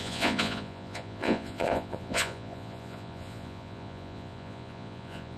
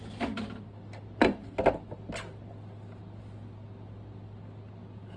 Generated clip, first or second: first